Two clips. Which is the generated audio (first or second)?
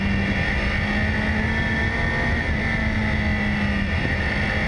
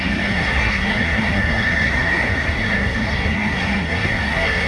second